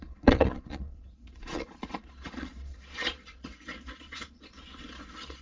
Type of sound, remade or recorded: remade